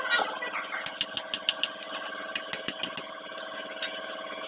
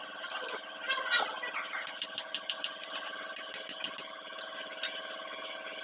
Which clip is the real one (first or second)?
first